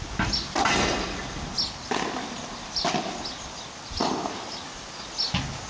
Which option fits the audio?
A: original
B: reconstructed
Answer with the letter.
A